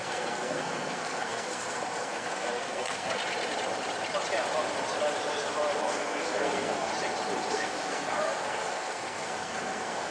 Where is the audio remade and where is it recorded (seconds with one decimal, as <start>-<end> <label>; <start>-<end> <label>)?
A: 0.0-3.2 remade; 3.2-5.8 recorded; 5.8-6.9 remade; 6.9-7.5 recorded; 7.5-10.1 remade